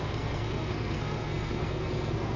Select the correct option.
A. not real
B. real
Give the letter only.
A